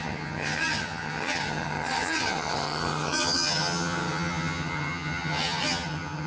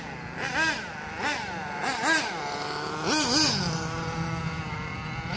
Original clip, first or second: second